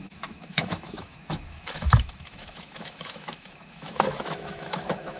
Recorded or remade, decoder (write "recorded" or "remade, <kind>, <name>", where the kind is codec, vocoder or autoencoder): remade, autoencoder, DAC-VAE